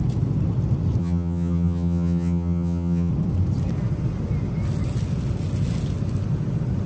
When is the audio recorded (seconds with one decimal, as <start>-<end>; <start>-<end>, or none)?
0.0-1.0; 3.1-6.9